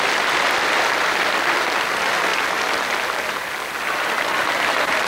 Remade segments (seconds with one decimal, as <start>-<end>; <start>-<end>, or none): none